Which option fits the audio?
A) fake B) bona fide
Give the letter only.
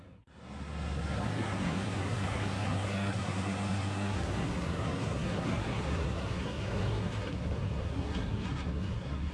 A